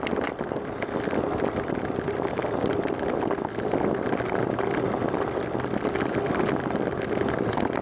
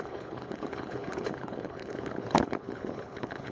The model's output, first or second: second